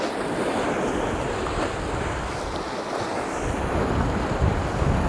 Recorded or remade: recorded